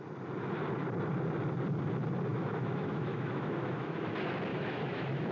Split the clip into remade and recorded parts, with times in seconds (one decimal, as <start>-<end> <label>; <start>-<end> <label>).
0.0-2.3 recorded; 2.3-4.1 remade; 4.1-4.5 recorded; 4.5-5.3 remade